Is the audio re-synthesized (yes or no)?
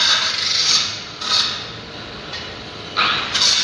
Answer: no